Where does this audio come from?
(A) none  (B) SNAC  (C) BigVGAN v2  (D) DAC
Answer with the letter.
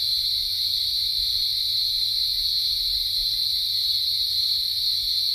C